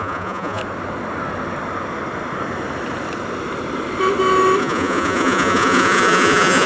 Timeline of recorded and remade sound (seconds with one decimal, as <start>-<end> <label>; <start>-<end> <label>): 0.0-0.6 remade; 0.6-4.6 recorded; 4.6-6.7 remade

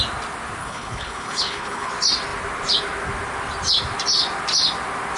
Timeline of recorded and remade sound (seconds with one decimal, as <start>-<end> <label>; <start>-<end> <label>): 0.0-0.6 recorded; 0.6-1.9 remade; 1.9-5.2 recorded

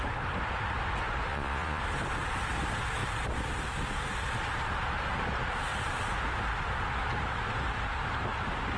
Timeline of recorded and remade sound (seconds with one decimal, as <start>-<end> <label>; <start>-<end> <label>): 0.0-1.3 recorded; 1.3-1.8 remade; 1.8-8.8 recorded

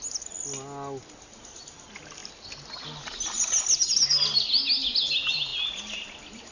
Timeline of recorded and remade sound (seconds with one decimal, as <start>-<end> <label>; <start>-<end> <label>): 0.0-6.5 recorded